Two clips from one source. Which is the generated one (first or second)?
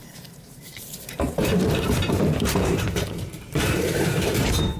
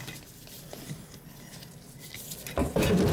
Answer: first